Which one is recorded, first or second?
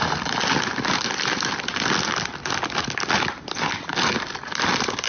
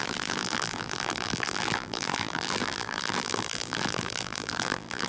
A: first